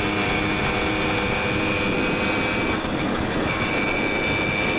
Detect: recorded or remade recorded